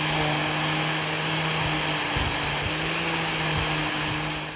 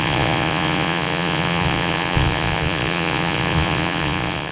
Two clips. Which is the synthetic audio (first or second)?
second